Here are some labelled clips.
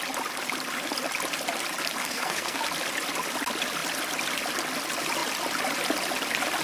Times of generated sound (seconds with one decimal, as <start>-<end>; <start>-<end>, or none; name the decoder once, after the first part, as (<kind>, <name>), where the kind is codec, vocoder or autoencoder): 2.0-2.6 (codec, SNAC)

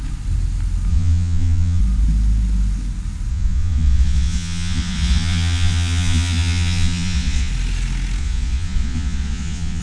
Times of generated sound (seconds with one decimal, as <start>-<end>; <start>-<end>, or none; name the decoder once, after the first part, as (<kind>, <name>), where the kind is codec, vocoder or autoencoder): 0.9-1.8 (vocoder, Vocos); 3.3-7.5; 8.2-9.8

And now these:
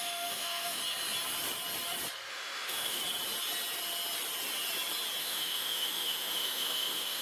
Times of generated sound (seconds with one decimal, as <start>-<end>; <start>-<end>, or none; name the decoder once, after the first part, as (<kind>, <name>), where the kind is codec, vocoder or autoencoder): 0.0-0.8 (autoencoder, DAC-VAE); 2.3-3.0; 5.2-7.2

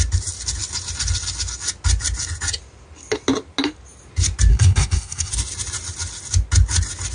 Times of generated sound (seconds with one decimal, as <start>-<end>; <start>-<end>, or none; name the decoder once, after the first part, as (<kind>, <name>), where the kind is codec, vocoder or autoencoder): 4.5-5.3 (codec, SNAC)

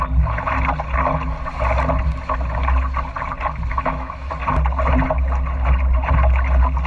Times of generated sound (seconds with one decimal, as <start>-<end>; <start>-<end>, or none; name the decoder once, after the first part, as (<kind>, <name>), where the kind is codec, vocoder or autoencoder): 3.7-4.3 (autoencoder, DAC-VAE)

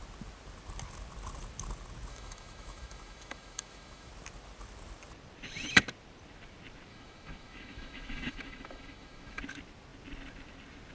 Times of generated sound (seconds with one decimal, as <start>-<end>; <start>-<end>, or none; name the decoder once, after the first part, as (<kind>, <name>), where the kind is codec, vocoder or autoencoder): 2.1-4.1 (autoencoder, DAC-VAE); 6.9-9.4